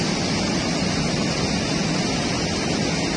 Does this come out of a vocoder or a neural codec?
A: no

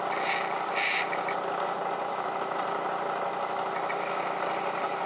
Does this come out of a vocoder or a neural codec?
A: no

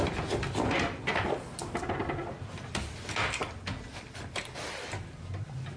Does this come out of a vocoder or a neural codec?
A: no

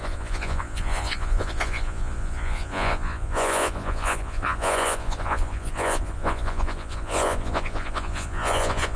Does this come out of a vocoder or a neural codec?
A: yes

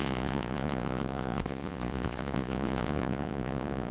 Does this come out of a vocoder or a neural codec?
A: yes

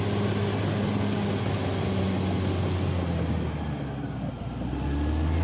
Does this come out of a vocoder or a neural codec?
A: no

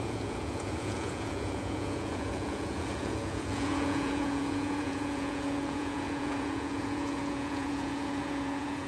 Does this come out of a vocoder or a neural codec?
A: yes